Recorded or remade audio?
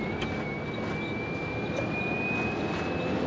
recorded